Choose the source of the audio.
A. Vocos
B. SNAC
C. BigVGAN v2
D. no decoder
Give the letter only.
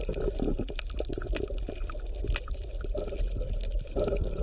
D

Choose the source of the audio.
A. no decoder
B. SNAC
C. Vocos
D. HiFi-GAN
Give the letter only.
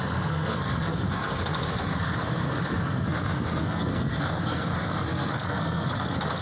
B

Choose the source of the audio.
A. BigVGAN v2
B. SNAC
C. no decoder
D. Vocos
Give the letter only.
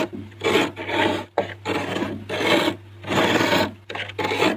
C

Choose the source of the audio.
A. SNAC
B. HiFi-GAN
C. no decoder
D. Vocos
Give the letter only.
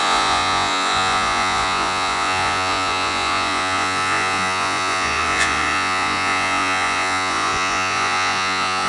D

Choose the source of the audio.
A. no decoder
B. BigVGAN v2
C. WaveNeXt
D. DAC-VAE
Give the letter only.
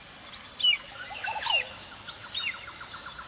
A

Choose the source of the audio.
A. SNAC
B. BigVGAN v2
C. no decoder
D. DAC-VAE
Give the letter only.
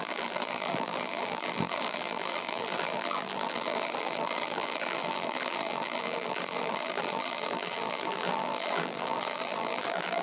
B